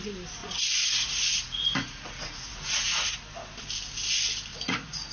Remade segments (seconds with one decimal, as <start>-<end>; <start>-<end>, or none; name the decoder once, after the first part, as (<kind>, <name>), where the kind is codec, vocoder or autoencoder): 0.4-3.2 (vocoder, Vocos); 4.5-5.1